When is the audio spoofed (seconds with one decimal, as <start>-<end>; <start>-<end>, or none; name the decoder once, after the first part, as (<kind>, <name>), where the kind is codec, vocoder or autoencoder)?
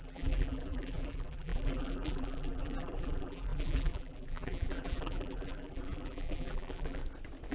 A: 0.0-7.0 (vocoder, BigVGAN v2)